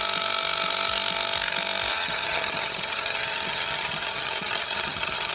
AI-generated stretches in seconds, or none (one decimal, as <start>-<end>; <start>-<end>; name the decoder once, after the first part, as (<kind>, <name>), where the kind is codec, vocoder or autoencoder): 1.9-5.3 (vocoder, HiFi-GAN)